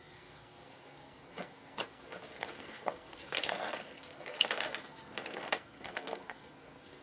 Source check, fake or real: fake